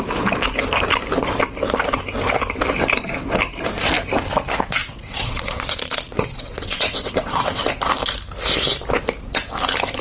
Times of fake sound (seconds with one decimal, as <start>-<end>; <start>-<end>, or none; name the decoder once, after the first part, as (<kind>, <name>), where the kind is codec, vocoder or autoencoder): 4.8-7.6 (vocoder, WaveNeXt)